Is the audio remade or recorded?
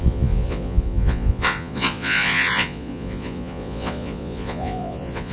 remade